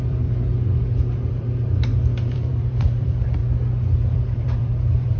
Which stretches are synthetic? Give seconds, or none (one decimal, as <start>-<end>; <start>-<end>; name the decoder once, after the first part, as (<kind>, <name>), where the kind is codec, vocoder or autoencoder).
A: 0.0-3.4 (vocoder, BigVGAN v2); 4.0-5.2